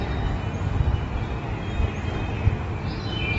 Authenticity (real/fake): real